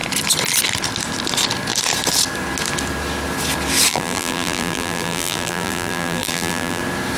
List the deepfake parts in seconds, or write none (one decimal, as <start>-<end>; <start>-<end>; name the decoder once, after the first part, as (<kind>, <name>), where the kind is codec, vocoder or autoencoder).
3.9-6.8 (vocoder, BigVGAN v2)